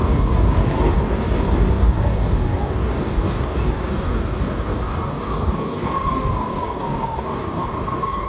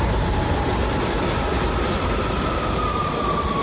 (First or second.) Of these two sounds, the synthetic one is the first